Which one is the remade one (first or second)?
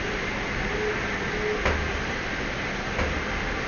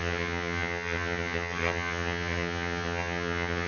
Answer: second